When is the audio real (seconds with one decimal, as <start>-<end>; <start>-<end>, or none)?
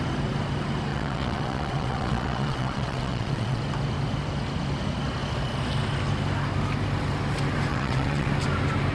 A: 0.0-0.9; 3.6-7.7; 8.3-8.9